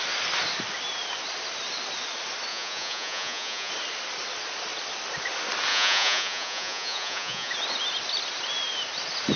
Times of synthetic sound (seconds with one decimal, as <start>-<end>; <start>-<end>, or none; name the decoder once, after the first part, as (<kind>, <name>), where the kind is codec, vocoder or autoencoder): 2.5-3.7 (vocoder, Vocos); 5.7-7.5